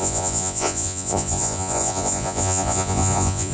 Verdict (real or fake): fake